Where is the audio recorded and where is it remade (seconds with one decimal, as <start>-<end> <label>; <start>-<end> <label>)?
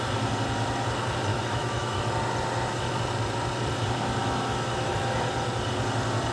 0.0-1.3 recorded; 1.3-2.0 remade; 2.0-4.2 recorded; 4.2-4.9 remade; 4.9-6.3 recorded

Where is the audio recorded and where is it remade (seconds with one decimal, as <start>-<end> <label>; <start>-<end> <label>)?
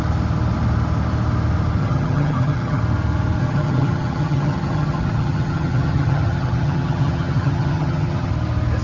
0.0-1.8 recorded; 1.8-2.8 remade; 2.8-3.4 recorded; 3.4-8.3 remade; 8.3-8.8 recorded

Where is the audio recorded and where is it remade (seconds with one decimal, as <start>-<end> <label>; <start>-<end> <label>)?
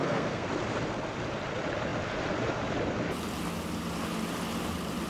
0.0-0.5 remade; 0.5-5.1 recorded